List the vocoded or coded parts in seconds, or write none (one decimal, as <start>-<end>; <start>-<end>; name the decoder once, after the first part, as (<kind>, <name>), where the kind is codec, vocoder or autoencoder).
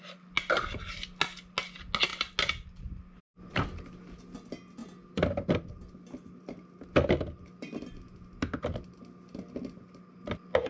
none